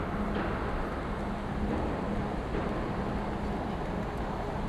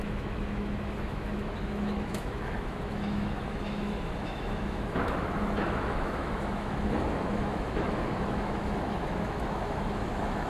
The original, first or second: first